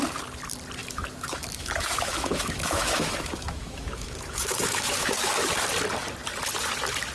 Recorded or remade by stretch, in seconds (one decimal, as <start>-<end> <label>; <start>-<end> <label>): 0.0-0.8 recorded; 0.8-5.1 remade; 5.1-7.1 recorded